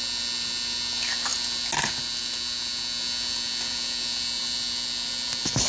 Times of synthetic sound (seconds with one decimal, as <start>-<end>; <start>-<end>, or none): none